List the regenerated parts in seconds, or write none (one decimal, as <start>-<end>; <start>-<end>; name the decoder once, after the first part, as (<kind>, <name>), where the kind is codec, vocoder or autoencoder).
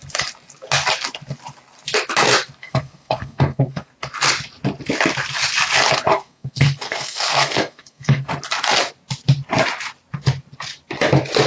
2.6-3.9 (codec, SNAC); 6.1-8.3